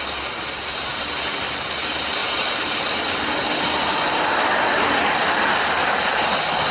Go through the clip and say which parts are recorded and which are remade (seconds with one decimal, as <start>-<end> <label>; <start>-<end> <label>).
0.0-2.2 recorded; 2.2-3.1 remade; 3.1-6.7 recorded